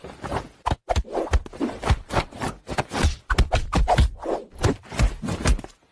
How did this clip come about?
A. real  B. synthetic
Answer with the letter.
A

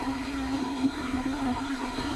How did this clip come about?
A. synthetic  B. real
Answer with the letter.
A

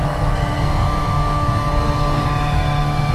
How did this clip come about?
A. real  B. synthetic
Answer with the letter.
B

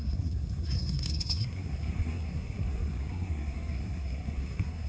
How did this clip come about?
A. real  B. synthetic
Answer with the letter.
B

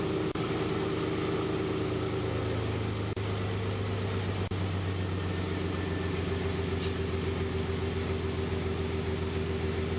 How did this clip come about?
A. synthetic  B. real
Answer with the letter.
B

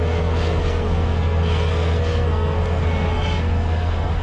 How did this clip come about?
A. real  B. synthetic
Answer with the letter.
B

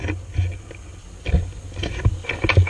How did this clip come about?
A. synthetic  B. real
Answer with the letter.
B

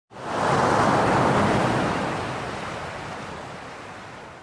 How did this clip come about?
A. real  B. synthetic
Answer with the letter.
A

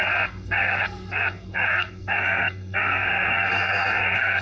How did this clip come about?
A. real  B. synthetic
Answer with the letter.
B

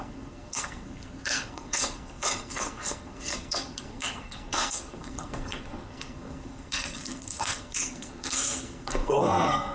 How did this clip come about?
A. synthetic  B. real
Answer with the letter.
A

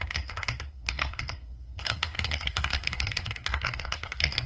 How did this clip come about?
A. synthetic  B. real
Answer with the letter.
A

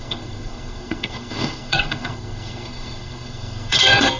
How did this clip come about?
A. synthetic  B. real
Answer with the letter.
A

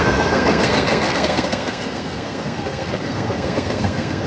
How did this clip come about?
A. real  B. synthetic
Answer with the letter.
B